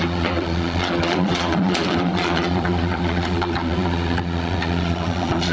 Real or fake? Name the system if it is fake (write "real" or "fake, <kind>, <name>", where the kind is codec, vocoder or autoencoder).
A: fake, vocoder, Vocos